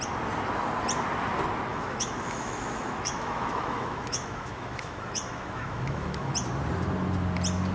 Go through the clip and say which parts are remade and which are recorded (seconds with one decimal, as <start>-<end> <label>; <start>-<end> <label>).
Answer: 0.0-1.7 recorded; 1.7-6.3 remade; 6.3-7.7 recorded